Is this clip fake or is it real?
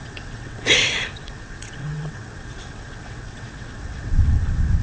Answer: fake